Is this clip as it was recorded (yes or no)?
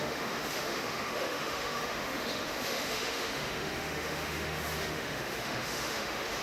no